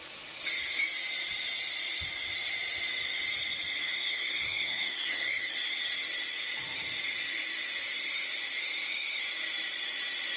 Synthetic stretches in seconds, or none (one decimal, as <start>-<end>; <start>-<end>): 3.8-5.5